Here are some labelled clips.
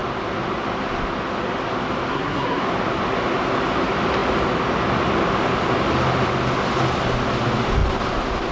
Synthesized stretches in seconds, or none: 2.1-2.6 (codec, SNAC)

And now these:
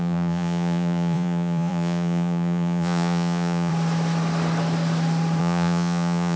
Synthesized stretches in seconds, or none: 0.0-3.7 (vocoder, Vocos); 5.4-6.4

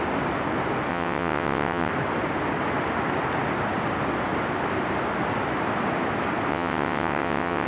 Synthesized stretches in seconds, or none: 0.9-1.9 (vocoder, WaveNeXt); 6.5-7.7